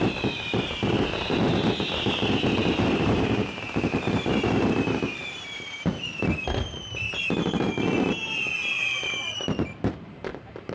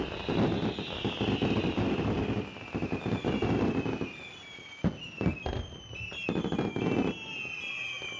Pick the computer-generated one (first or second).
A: first